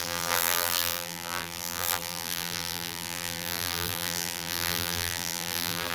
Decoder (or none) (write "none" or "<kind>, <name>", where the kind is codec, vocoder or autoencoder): vocoder, BigVGAN v2